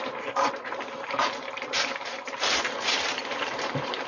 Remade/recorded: remade